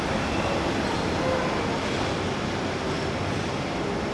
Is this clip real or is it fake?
real